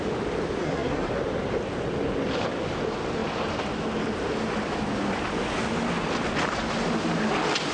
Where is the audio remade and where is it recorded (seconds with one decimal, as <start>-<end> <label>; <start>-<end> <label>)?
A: 0.0-0.6 recorded; 0.6-1.1 remade; 1.1-7.7 recorded